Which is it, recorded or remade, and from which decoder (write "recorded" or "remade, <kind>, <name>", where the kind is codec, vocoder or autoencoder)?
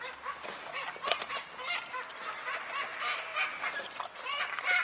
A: recorded